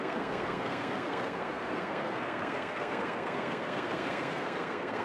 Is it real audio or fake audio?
fake